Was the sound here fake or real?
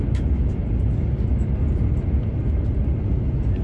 real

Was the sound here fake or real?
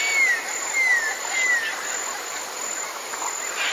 real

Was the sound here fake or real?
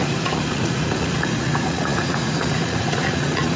fake